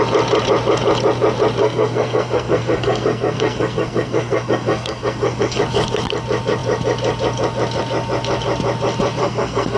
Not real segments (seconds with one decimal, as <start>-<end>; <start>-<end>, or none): 1.6-5.6; 9.2-9.8